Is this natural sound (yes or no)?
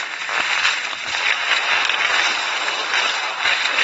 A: no